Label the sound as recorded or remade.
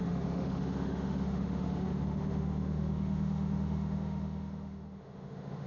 remade